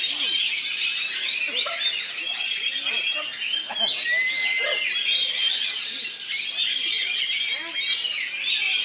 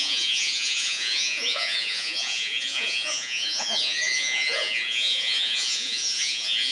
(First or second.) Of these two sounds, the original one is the first